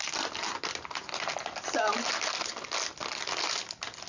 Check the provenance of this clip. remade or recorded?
recorded